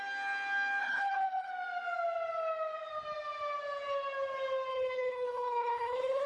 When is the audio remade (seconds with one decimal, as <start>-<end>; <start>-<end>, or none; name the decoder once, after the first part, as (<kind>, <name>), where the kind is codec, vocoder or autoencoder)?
0.8-1.5 (codec, HILCodec); 4.7-6.3